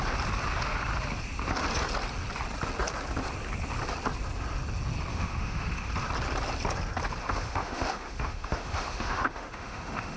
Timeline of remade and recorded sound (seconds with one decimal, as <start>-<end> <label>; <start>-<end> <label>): 0.0-5.1 recorded; 5.1-5.9 remade; 5.9-7.2 recorded; 7.2-10.2 remade